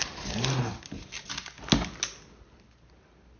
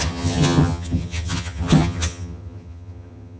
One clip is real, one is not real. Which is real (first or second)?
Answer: first